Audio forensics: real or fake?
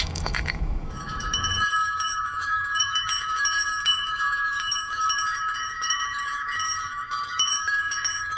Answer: fake